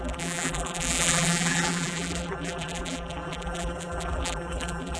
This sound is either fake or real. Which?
fake